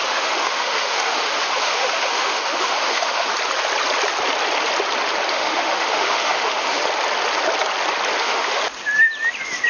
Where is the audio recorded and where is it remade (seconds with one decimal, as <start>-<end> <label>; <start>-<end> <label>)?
0.0-3.3 remade; 3.3-5.3 recorded; 5.3-6.8 remade; 6.8-8.2 recorded; 8.2-8.6 remade; 8.6-9.7 recorded